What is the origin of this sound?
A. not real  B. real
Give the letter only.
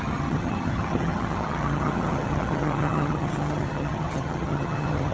A